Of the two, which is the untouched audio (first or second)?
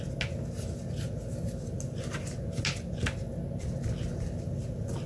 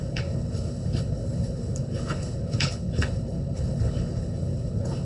first